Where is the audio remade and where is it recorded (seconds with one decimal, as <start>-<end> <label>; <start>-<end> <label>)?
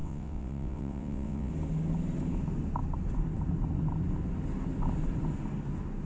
0.0-1.5 remade; 1.5-6.0 recorded